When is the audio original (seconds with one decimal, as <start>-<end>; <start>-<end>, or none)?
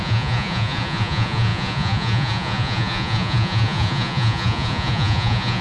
none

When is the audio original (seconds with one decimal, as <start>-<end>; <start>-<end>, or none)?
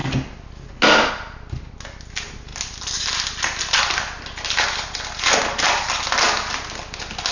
0.0-7.3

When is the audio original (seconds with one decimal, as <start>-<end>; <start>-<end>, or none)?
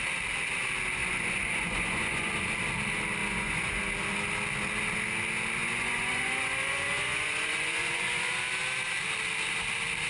0.0-1.0; 2.3-3.2; 3.8-5.6; 8.3-10.1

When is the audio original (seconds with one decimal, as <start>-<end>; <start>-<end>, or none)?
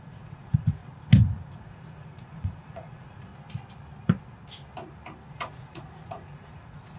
0.8-1.5; 3.3-5.3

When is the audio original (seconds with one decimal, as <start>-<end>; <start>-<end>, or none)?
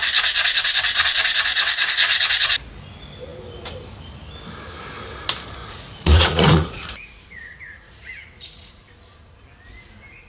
0.0-5.6; 8.7-10.3